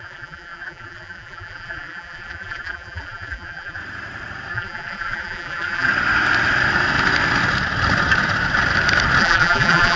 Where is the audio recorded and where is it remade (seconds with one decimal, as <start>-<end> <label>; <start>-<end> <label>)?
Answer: 0.0-3.8 remade; 3.8-4.5 recorded; 4.5-5.9 remade; 5.9-9.2 recorded; 9.2-10.0 remade